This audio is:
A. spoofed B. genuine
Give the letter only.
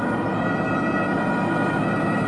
B